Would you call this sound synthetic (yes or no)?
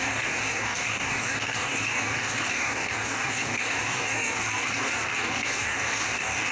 yes